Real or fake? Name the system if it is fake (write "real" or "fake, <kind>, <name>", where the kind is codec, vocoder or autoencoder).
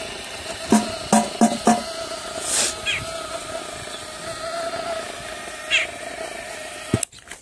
real